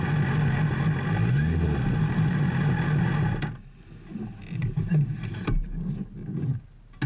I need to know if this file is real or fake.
real